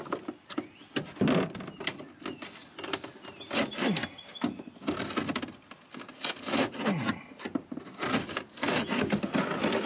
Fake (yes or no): no